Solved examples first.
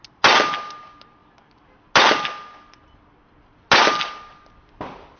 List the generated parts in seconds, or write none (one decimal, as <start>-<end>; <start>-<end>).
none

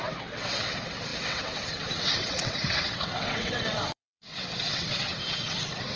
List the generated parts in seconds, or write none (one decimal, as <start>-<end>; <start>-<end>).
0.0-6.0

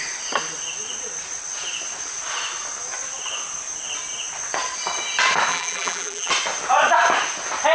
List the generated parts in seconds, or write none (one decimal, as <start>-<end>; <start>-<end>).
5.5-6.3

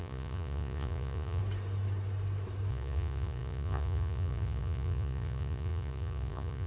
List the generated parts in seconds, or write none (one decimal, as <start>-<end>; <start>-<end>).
0.0-1.4; 2.7-6.7

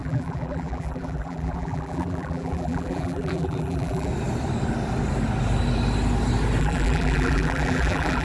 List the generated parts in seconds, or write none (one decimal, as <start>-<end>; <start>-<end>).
0.0-4.1; 6.6-8.2

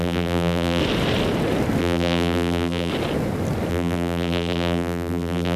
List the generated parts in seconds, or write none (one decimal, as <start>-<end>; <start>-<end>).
0.0-0.8; 1.8-2.9; 3.7-5.6

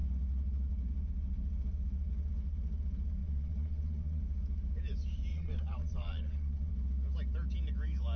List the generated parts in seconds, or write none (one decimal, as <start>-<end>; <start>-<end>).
3.2-4.2; 5.3-6.7